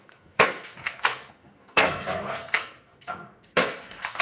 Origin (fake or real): fake